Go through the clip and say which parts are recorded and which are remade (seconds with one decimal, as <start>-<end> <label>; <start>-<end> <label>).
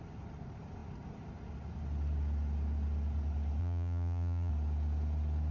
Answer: 0.0-3.6 recorded; 3.6-4.5 remade; 4.5-5.5 recorded